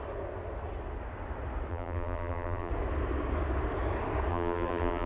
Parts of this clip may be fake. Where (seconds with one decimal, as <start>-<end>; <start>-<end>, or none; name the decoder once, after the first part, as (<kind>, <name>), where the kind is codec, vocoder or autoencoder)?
1.7-2.7 (vocoder, BigVGAN v2); 4.3-5.1